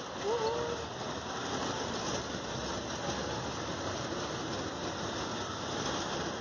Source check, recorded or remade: recorded